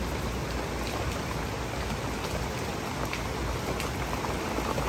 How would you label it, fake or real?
real